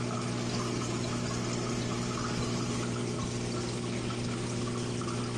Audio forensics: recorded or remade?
recorded